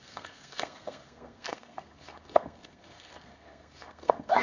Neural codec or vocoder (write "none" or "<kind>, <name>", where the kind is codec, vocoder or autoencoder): codec, SNAC